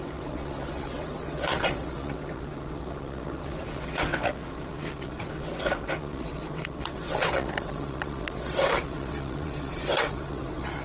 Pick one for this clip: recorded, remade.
remade